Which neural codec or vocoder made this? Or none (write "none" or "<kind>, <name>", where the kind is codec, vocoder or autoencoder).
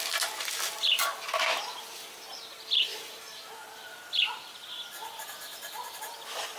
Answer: none